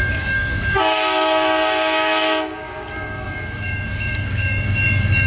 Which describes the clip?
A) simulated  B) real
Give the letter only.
A